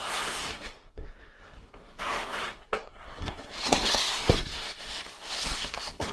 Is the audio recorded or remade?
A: remade